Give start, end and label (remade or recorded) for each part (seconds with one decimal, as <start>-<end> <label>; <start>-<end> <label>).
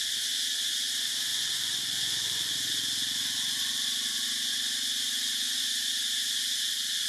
0.0-1.3 recorded; 1.3-2.5 remade; 2.5-3.2 recorded; 3.2-5.7 remade; 5.7-7.1 recorded